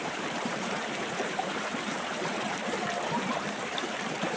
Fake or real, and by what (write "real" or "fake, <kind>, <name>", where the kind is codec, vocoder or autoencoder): fake, vocoder, BigVGAN v2